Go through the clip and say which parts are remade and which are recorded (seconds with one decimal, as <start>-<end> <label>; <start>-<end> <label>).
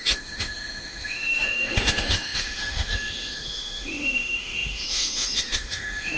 0.0-6.2 remade